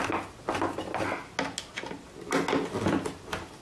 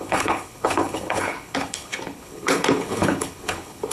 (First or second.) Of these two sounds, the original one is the first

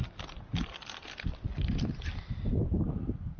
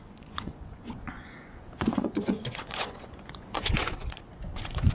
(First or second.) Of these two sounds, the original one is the first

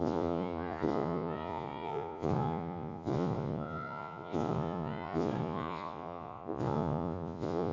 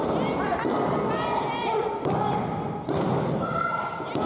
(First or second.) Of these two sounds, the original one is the second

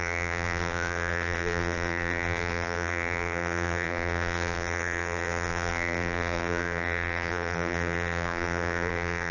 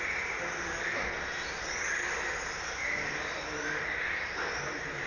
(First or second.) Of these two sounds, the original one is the second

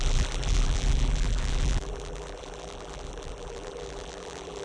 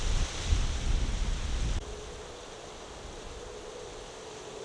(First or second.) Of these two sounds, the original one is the second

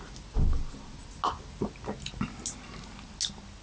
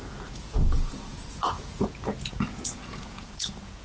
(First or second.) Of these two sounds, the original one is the first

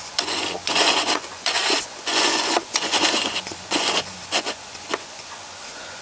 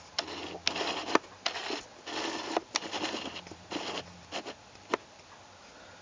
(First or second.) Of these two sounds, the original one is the second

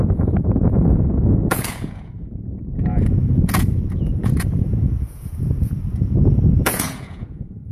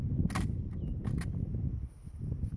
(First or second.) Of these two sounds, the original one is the second